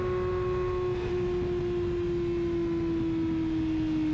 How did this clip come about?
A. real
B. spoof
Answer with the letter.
A